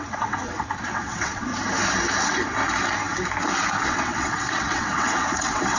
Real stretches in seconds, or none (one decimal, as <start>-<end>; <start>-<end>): 1.5-2.2; 2.6-3.8